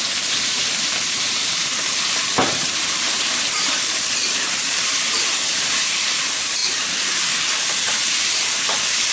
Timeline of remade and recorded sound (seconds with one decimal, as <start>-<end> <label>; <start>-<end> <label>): 0.0-9.1 remade